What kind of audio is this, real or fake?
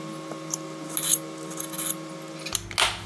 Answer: real